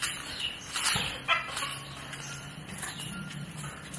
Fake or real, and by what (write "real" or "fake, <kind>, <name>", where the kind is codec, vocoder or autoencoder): real